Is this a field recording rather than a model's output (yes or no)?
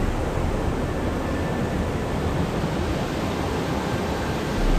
yes